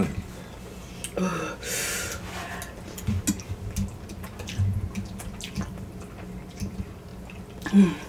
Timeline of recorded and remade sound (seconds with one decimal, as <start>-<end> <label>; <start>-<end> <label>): 0.0-8.1 recorded